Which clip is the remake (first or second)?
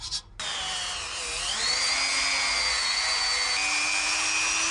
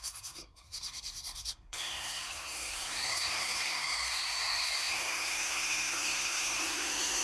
second